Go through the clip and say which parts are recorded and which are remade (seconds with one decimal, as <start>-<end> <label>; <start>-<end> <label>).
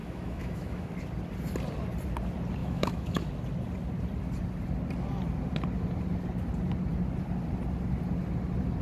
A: 0.0-0.9 remade; 0.9-2.6 recorded; 2.6-3.3 remade; 3.3-8.8 recorded